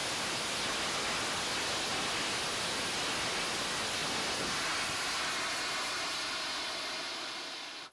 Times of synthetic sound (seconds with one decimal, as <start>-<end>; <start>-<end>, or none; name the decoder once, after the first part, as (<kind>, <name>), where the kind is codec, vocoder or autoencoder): none